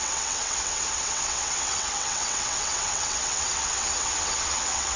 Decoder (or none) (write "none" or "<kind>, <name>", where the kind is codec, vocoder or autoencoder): vocoder, WaveNeXt